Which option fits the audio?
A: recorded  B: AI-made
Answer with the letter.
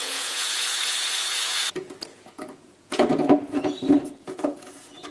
B